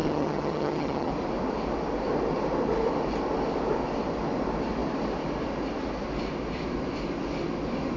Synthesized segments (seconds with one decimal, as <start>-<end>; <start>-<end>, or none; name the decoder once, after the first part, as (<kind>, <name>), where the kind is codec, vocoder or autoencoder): 0.0-1.1 (vocoder, HiFi-GAN)